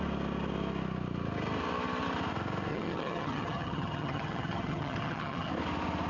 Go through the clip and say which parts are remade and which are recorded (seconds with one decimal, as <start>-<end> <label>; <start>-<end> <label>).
0.0-2.7 recorded; 2.7-5.5 remade; 5.5-6.1 recorded